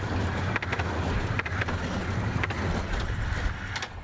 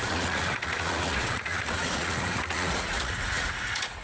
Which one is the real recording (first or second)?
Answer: first